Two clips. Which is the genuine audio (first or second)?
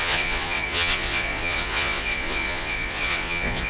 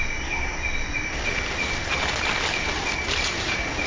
second